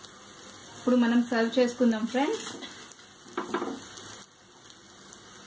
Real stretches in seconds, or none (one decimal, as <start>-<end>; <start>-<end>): 0.0-5.5